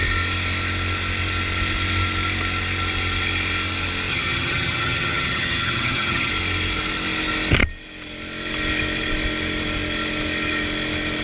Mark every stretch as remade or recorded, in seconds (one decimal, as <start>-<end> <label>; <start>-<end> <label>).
0.0-4.1 recorded; 4.1-6.3 remade; 6.3-11.2 recorded